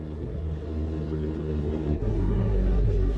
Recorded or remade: remade